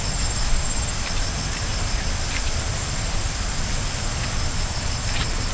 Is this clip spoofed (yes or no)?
no